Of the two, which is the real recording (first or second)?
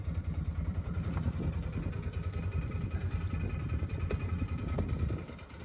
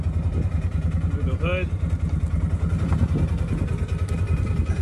second